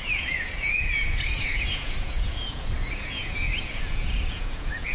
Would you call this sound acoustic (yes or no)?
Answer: no